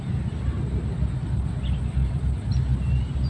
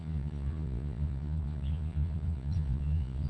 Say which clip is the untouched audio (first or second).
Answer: first